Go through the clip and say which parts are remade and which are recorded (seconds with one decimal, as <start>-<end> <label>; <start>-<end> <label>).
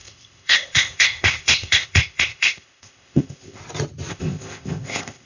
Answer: 0.0-3.6 remade; 3.6-4.1 recorded; 4.1-5.3 remade